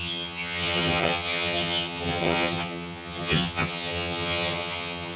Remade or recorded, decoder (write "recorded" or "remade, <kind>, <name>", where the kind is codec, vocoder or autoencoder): remade, vocoder, HiFi-GAN